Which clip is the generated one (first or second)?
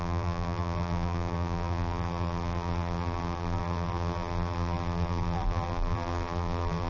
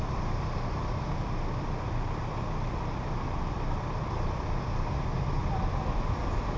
first